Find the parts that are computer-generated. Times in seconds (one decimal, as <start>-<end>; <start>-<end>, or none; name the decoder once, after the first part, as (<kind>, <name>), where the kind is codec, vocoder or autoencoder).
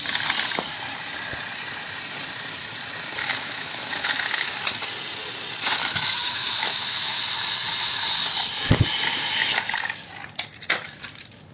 3.2-4.5 (autoencoder, DAC-VAE); 5.8-7.2